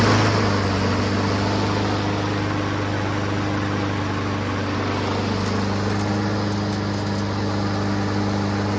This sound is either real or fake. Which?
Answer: real